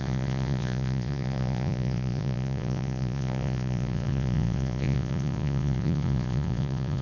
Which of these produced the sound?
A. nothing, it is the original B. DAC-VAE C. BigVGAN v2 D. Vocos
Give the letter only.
D